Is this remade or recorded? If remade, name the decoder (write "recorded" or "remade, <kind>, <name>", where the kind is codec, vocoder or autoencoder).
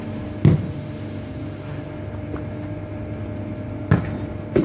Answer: recorded